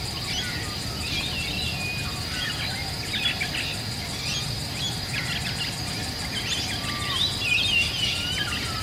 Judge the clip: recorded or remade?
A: recorded